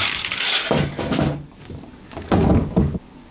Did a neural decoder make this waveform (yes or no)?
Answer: yes